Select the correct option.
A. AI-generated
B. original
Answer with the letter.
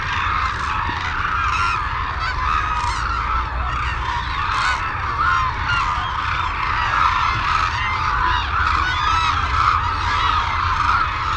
B